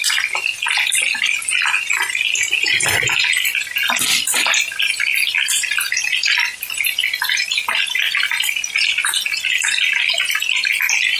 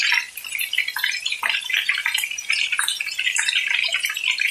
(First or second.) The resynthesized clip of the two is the second